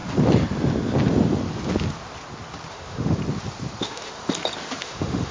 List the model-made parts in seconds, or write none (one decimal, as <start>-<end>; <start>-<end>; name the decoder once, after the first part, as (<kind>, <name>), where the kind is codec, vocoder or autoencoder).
2.7-3.2 (autoencoder, DAC-VAE); 3.8-4.2; 4.8-5.3